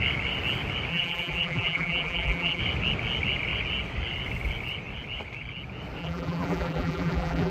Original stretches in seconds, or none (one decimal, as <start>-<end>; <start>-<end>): 0.0-0.9; 2.6-6.0